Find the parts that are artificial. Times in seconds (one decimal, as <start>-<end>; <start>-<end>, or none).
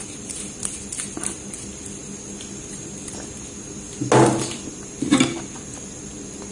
none